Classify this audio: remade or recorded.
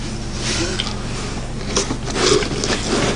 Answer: recorded